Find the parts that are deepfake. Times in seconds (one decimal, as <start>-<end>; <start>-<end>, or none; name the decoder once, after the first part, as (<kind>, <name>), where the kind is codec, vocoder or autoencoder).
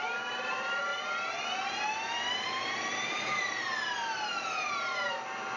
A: 0.0-0.9 (vocoder, BigVGAN v2); 2.3-5.6